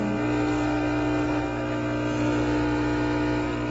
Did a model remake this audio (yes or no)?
no